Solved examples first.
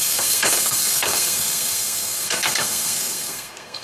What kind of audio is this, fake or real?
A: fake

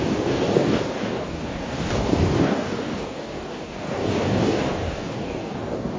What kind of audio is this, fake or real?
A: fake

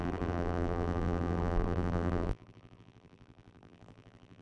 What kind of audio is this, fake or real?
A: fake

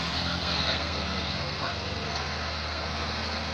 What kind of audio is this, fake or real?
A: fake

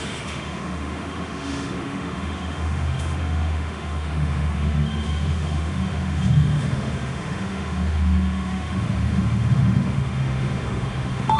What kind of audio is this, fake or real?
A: fake